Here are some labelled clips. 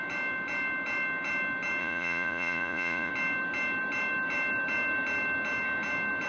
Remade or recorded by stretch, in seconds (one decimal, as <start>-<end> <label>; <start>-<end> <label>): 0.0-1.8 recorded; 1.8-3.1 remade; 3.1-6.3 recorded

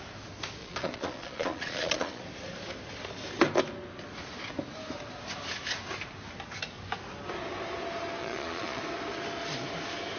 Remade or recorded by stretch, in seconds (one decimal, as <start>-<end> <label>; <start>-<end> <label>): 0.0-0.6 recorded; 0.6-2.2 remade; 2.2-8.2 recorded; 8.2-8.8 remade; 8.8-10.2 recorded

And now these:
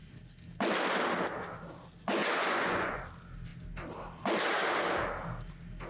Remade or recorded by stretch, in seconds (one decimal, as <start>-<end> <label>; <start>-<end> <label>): 0.0-2.2 recorded; 2.2-3.0 remade; 3.0-5.9 recorded

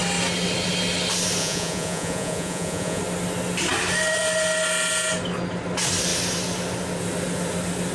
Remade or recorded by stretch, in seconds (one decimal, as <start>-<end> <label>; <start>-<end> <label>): 0.0-1.4 recorded; 1.4-3.0 remade; 3.0-7.9 recorded